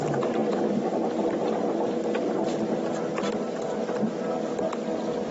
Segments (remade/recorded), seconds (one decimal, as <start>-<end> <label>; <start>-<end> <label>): 0.0-5.3 recorded